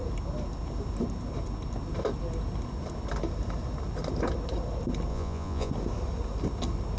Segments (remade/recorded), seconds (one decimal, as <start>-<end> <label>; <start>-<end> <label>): 0.0-5.1 recorded; 5.1-5.7 remade; 5.7-7.0 recorded